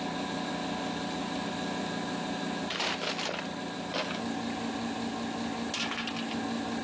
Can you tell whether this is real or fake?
real